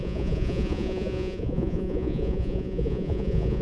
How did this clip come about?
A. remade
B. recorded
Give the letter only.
A